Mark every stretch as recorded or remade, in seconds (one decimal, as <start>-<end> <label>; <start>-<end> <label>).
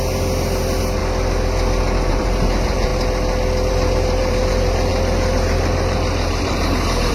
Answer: 0.0-1.0 remade; 1.0-2.1 recorded; 2.1-2.9 remade; 2.9-3.7 recorded; 3.7-7.1 remade